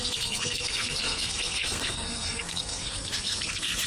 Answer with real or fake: fake